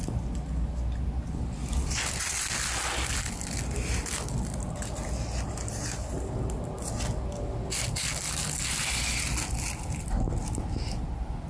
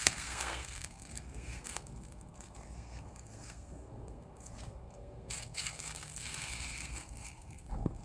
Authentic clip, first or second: first